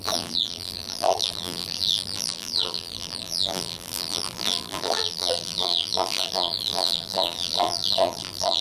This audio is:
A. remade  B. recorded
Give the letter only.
A